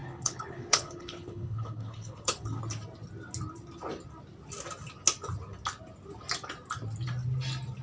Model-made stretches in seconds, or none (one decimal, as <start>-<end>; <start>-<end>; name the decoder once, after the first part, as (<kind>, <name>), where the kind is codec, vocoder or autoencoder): 0.0-2.6 (codec, HILCodec)